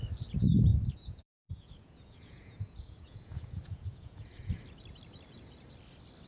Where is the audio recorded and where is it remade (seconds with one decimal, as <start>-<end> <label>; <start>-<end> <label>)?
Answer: 0.0-0.7 recorded; 0.7-4.5 remade; 4.5-6.3 recorded